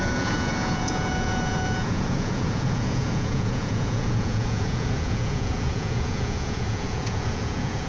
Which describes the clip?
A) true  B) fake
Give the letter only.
B